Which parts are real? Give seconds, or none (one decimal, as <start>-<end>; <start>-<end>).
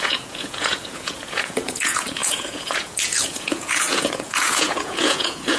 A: none